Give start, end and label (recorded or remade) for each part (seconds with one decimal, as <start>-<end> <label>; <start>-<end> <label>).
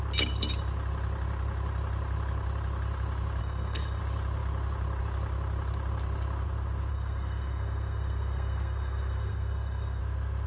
0.0-3.4 recorded; 3.4-4.0 remade; 4.0-6.9 recorded; 6.9-10.0 remade; 10.0-10.5 recorded